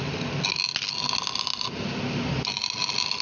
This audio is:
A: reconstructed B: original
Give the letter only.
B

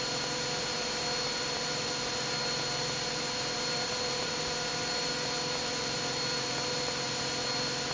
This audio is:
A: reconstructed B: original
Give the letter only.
B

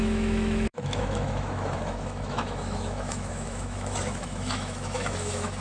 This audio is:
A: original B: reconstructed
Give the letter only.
B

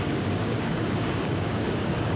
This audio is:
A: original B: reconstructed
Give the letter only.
B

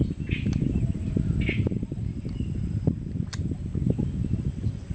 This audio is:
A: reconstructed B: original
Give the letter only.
B